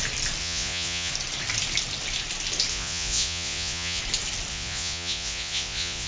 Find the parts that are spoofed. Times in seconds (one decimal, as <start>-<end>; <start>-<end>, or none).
0.4-1.1; 2.7-4.0; 4.5-6.1